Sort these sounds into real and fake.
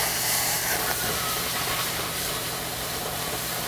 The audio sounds fake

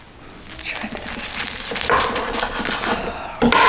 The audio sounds real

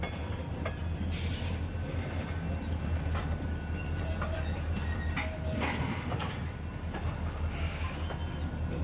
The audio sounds real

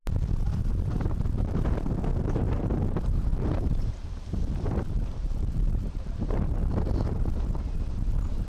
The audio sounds fake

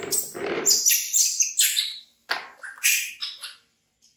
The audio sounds fake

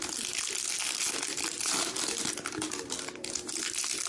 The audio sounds real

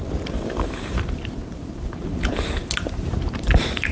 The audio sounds fake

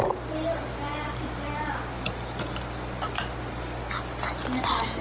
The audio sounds real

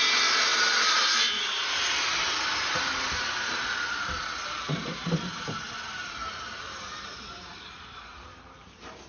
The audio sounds fake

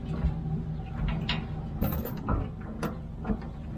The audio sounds real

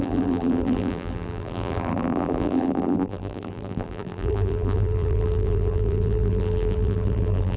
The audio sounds fake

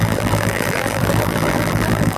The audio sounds fake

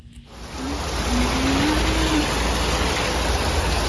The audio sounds real